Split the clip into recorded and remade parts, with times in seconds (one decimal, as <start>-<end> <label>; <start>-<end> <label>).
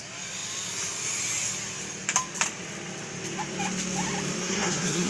0.0-4.4 recorded; 4.4-5.1 remade